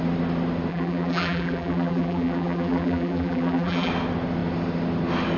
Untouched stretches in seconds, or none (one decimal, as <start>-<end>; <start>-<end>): 0.0-0.7; 3.9-5.4